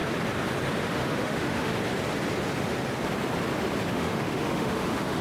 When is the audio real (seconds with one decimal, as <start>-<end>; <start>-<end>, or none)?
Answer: 0.0-0.8; 1.7-3.9